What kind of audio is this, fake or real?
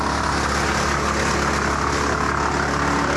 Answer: real